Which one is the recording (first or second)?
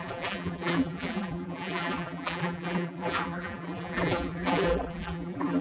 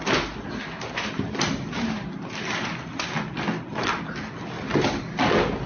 second